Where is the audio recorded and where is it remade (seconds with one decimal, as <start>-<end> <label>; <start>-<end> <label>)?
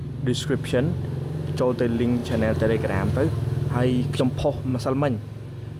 0.0-5.8 recorded